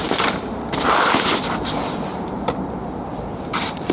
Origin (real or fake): real